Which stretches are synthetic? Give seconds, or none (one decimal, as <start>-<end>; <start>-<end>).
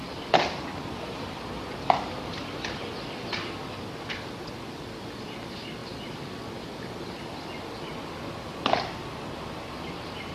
none